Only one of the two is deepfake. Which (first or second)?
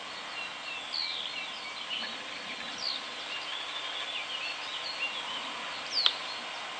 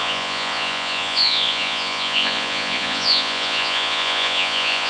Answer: second